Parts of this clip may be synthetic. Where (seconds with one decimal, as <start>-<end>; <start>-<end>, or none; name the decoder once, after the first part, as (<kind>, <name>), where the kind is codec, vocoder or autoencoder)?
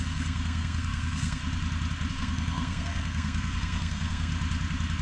0.0-1.4 (codec, SNAC); 2.1-4.3